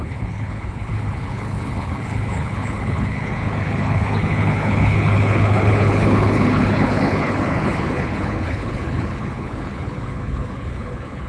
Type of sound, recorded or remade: remade